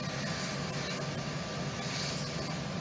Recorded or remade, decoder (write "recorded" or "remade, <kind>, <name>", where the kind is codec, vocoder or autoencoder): recorded